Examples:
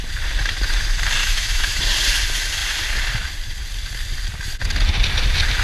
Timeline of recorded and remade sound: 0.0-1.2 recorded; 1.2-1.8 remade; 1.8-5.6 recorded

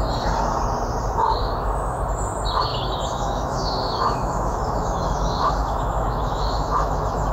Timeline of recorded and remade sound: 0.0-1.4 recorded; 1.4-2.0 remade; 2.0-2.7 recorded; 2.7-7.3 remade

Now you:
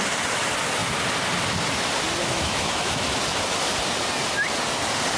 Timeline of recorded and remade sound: 0.0-2.2 recorded; 2.2-3.2 remade; 3.2-5.2 recorded